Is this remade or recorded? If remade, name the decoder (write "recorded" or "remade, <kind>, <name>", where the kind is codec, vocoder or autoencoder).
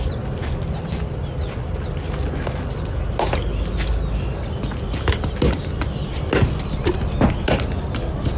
recorded